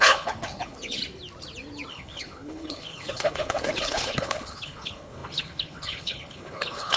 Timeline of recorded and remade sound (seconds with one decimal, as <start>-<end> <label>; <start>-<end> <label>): 0.0-1.0 remade; 1.0-1.9 recorded; 1.9-7.0 remade